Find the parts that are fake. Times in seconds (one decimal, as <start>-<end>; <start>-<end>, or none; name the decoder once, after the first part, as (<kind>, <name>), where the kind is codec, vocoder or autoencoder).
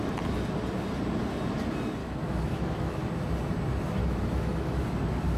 2.0-3.0 (autoencoder, DAC-VAE); 4.0-4.8